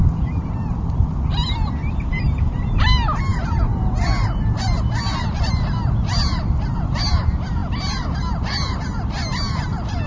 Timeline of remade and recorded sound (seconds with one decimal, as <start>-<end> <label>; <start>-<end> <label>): 0.0-10.1 recorded